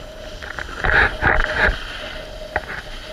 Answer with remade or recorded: recorded